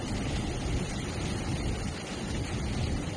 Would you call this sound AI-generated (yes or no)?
no